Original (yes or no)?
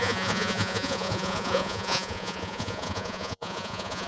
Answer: no